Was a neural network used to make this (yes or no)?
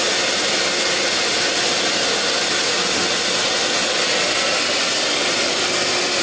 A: no